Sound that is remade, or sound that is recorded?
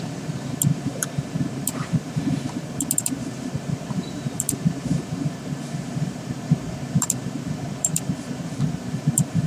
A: remade